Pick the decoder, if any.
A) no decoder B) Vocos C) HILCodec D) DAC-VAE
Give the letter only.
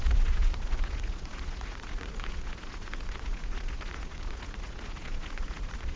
B